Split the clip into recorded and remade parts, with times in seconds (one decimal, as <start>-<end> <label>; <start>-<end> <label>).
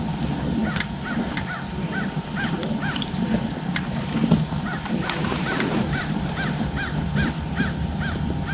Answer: 0.0-0.6 recorded; 0.6-4.6 remade; 4.6-5.2 recorded; 5.2-6.6 remade; 6.6-8.5 recorded